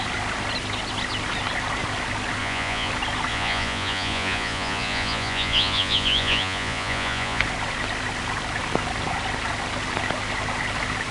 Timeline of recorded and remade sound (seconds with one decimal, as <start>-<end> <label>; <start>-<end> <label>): 0.0-2.4 recorded; 2.4-2.9 remade; 2.9-3.3 recorded; 3.3-7.4 remade; 7.4-11.1 recorded